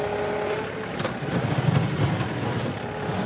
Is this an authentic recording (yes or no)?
yes